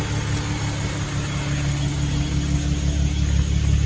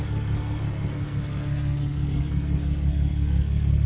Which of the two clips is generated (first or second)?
second